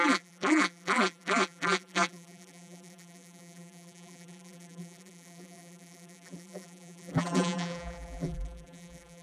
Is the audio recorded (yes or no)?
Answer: no